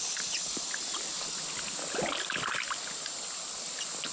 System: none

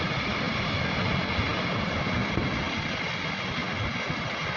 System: none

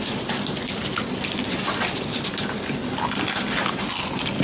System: none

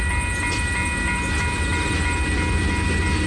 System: none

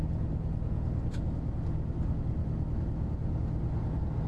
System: none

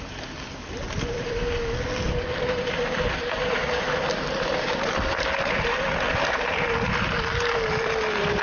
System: none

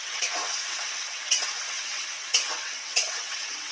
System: vocoder, WaveNeXt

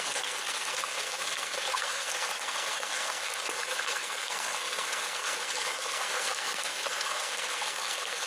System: codec, SNAC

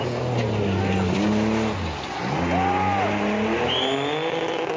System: none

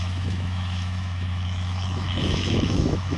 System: autoencoder, DAC-VAE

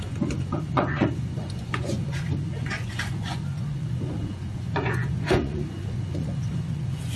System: vocoder, Vocos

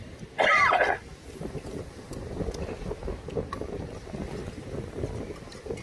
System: none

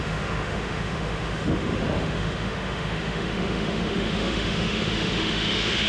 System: autoencoder, DAC-VAE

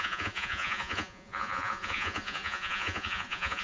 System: vocoder, Vocos